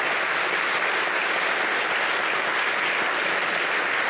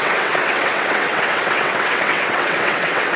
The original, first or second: first